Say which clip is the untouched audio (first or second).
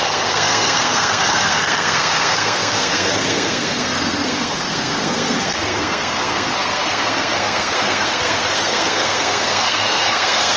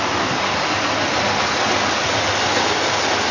second